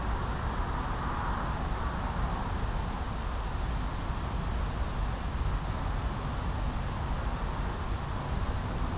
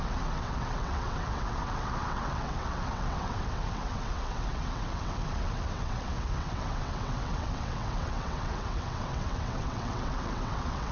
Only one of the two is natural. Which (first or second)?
first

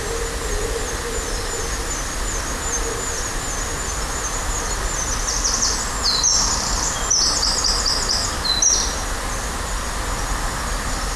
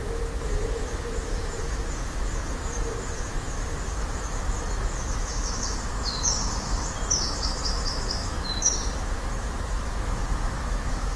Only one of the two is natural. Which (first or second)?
first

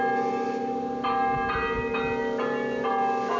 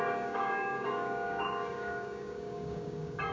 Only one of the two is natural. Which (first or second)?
first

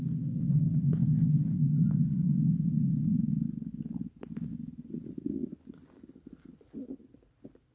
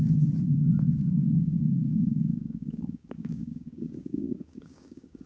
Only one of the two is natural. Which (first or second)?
first